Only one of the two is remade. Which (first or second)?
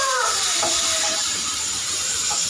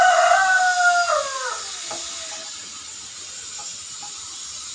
first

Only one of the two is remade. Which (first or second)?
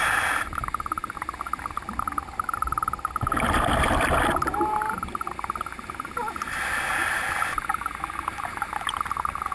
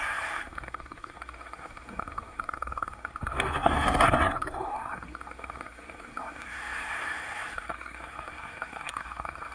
second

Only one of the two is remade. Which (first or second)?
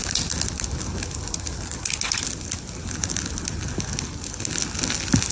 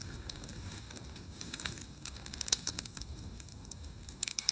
second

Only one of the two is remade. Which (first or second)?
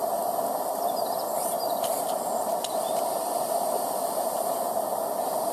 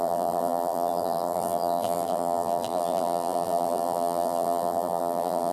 second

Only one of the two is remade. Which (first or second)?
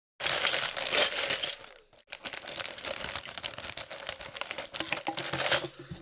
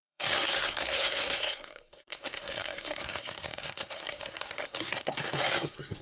second